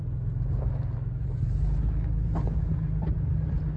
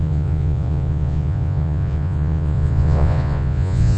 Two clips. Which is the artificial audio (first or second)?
second